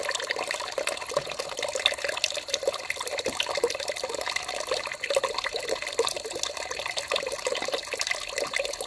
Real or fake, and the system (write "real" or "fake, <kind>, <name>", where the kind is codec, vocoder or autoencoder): real